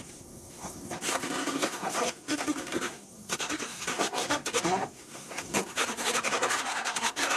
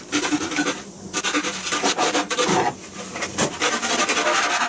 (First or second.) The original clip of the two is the second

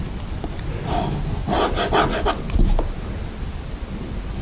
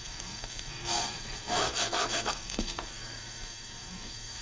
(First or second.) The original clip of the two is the first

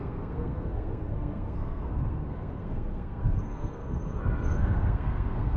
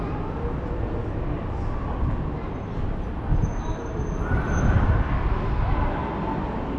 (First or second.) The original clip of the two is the second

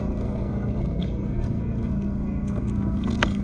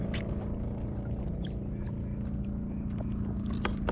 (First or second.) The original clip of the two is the second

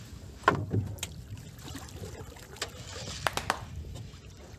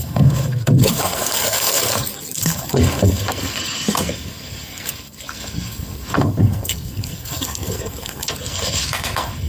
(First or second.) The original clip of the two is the first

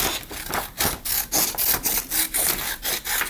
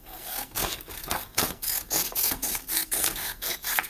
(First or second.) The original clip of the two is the first